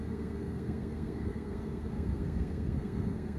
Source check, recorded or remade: remade